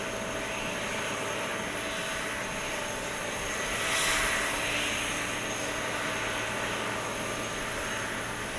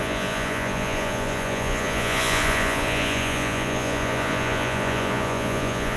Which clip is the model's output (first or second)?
second